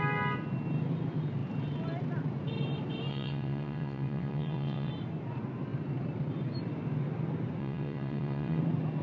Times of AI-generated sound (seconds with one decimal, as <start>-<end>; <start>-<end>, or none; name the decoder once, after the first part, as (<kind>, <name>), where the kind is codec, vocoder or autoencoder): 3.1-4.9 (vocoder, WaveNeXt); 7.6-8.6